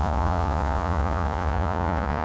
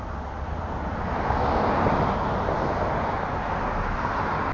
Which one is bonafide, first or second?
second